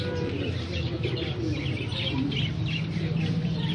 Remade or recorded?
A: recorded